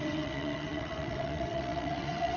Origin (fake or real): fake